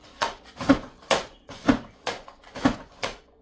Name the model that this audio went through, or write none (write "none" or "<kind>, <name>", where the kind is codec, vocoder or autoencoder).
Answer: vocoder, Vocos